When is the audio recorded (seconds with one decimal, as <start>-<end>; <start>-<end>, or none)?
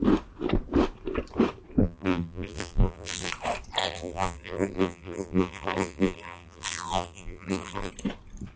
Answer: 0.0-1.8; 3.3-3.8; 7.9-8.6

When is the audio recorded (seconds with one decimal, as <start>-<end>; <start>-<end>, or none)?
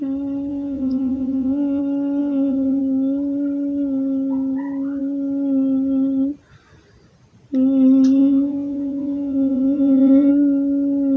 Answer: 0.0-0.5; 1.8-2.2; 2.8-8.2; 10.3-11.2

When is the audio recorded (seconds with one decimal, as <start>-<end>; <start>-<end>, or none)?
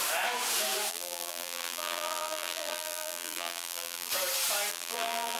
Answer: 0.0-0.9; 4.1-4.7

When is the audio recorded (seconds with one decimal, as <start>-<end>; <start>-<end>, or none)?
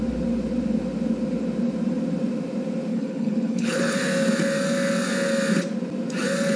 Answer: 0.0-2.9; 4.0-6.6